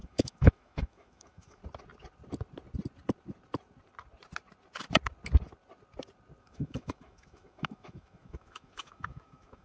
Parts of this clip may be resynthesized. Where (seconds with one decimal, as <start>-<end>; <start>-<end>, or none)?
0.0-1.6; 6.4-9.6